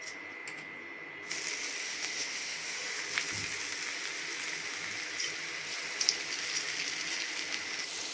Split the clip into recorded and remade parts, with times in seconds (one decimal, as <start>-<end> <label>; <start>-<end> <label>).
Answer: 0.0-1.8 recorded; 1.8-3.0 remade; 3.0-8.1 recorded